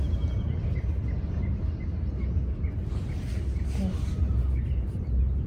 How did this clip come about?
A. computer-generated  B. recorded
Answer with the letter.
B